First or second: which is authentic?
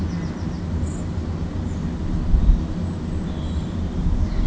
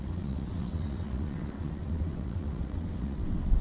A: first